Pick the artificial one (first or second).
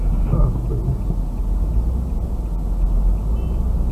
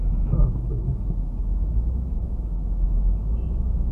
second